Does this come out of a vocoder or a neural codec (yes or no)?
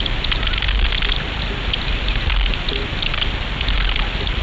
no